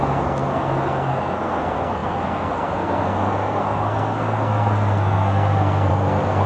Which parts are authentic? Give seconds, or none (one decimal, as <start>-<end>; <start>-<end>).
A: none